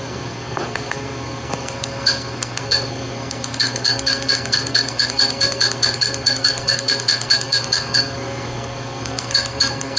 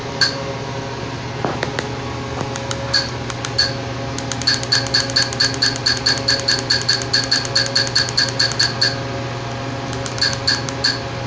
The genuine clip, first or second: second